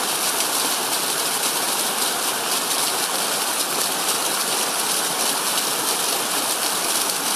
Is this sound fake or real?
real